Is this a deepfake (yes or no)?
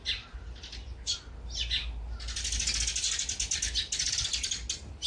no